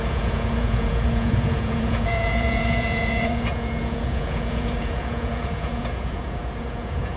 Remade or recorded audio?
remade